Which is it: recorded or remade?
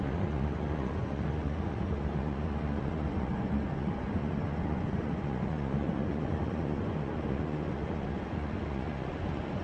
remade